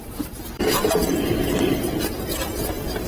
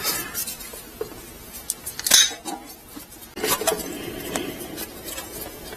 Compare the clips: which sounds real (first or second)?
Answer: second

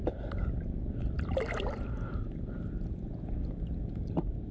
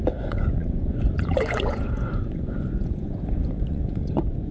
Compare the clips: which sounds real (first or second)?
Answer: first